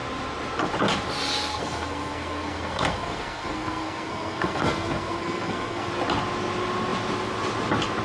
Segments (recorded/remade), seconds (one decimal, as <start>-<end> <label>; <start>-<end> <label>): 0.0-1.5 recorded; 1.5-5.9 remade; 5.9-8.0 recorded